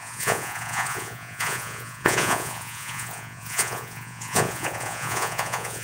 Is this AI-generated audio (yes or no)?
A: yes